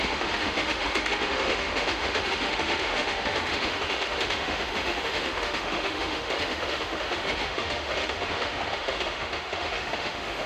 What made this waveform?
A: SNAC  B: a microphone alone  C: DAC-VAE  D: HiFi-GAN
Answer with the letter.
C